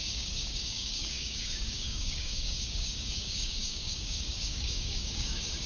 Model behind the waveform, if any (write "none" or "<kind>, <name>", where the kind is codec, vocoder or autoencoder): codec, DAC